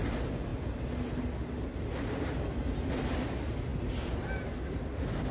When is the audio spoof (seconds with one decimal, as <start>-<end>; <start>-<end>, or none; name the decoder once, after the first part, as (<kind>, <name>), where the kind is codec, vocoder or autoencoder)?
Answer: none